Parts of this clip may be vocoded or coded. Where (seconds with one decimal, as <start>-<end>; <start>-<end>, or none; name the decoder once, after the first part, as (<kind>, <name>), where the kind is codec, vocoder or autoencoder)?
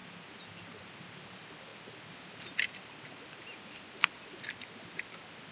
none